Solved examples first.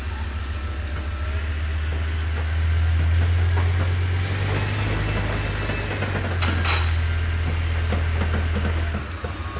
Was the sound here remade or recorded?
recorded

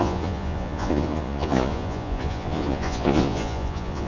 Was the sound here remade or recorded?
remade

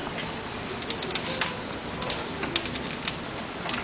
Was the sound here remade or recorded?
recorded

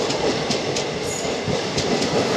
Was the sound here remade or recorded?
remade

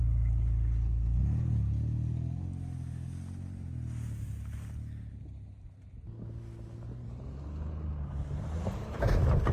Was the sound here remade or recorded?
recorded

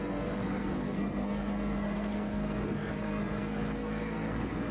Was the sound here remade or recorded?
remade